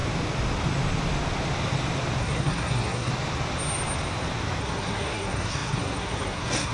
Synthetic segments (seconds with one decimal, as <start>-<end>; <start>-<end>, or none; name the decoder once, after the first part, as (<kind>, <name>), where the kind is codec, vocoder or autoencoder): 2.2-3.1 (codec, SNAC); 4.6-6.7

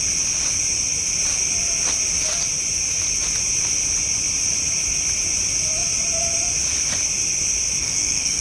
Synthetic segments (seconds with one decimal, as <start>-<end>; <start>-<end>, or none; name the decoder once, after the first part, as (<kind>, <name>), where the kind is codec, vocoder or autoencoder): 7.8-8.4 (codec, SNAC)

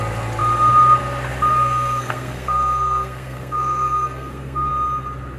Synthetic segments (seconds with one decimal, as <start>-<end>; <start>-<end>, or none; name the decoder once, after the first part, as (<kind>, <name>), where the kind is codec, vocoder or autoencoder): 1.5-4.7 (codec, SNAC)

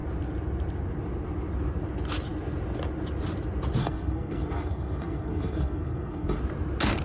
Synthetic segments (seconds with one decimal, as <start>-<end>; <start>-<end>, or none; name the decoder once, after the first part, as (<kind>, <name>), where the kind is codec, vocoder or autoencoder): 3.8-6.4 (codec, SNAC)

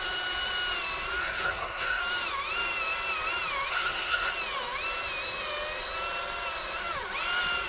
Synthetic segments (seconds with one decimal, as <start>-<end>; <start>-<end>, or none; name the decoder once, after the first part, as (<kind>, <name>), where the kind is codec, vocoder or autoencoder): 1.2-2.0 (codec, SNAC); 3.7-4.3

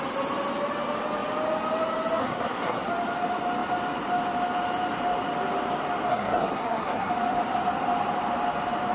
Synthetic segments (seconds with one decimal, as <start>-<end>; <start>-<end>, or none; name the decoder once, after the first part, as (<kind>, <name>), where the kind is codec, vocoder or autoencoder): 2.2-2.9 (codec, SNAC); 6.1-7.1

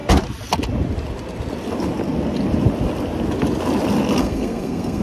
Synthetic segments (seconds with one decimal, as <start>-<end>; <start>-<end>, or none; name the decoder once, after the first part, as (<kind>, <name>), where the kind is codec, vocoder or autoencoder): 4.2-5.0 (codec, SNAC)